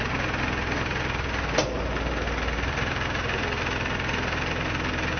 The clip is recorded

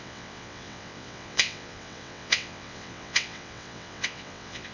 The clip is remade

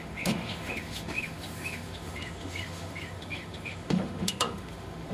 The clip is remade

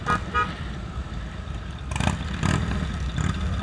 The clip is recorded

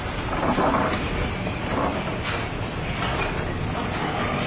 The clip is recorded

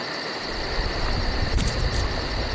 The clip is recorded